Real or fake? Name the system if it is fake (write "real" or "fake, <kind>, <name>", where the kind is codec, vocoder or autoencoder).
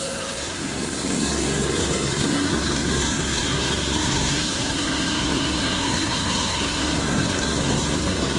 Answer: fake, codec, SNAC